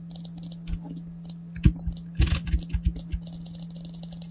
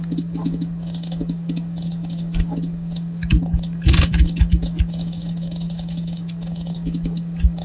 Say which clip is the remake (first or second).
second